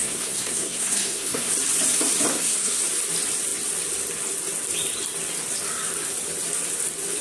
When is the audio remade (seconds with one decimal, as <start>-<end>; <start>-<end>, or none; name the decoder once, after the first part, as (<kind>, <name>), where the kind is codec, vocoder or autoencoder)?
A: 0.0-1.5 (codec, SNAC); 2.3-2.8